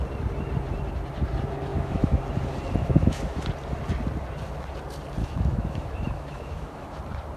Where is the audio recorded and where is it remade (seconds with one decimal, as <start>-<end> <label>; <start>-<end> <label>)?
0.0-1.7 recorded; 1.7-2.2 remade; 2.2-2.8 recorded; 2.8-3.4 remade; 3.4-5.2 recorded; 5.2-7.0 remade; 7.0-7.4 recorded